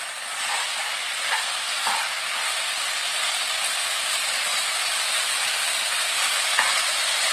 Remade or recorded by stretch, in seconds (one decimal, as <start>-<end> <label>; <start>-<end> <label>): 0.0-4.5 recorded; 4.5-7.3 remade